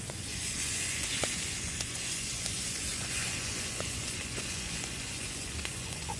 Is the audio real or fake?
fake